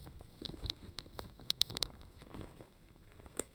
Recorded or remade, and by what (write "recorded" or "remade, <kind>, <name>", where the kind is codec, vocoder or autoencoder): remade, codec, SNAC